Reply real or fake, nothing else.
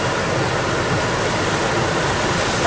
real